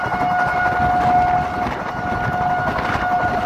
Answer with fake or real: real